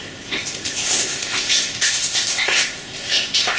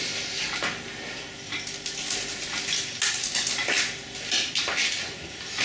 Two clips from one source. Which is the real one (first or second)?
second